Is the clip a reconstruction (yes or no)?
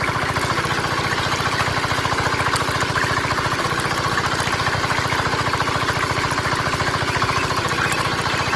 no